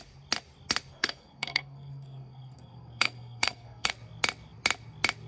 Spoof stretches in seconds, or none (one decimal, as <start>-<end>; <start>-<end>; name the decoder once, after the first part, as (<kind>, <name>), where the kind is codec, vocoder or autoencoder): 0.9-3.9 (codec, SNAC)